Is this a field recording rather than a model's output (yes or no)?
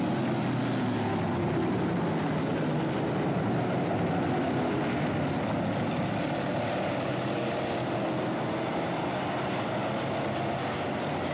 yes